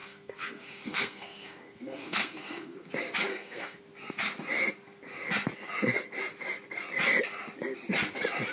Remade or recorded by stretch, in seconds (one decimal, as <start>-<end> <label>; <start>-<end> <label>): 0.0-2.9 remade; 2.9-3.3 recorded; 3.3-3.8 remade; 3.8-8.5 recorded